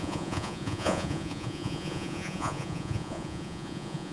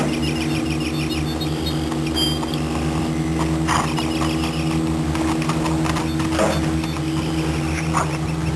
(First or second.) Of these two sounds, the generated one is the first